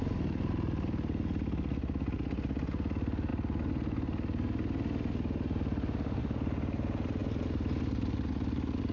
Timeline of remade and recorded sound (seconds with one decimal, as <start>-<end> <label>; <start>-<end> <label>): 0.0-8.9 recorded